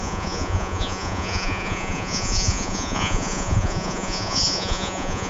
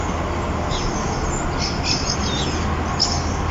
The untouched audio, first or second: second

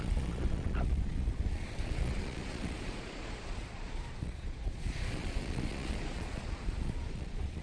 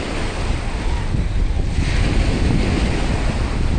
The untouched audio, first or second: second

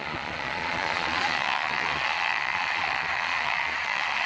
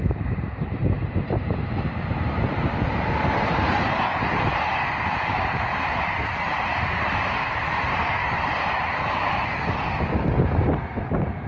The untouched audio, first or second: second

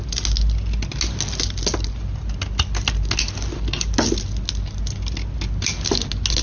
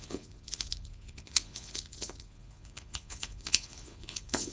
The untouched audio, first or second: first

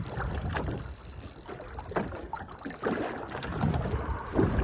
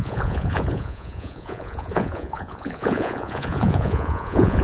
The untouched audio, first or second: first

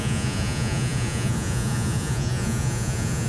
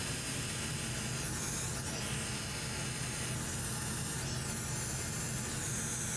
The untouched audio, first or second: second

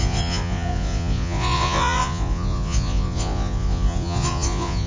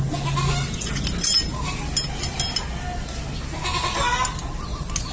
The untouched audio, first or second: second